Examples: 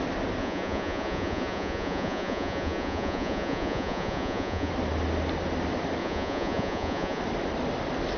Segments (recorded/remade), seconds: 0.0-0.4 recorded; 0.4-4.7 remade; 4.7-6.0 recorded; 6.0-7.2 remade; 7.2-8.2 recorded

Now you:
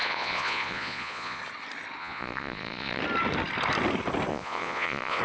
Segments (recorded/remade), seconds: 0.0-1.4 remade; 1.4-2.0 recorded; 2.0-3.0 remade; 3.0-4.3 recorded; 4.3-5.2 remade

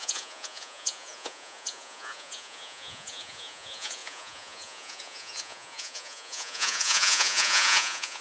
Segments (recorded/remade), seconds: 0.0-8.2 remade

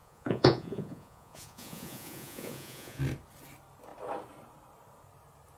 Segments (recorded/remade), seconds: 0.0-3.0 remade; 3.0-5.6 recorded